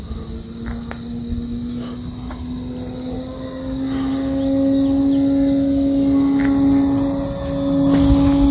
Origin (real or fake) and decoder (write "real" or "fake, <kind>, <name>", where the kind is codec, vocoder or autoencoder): real